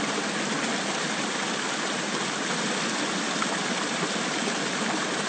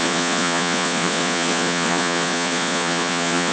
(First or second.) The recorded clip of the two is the first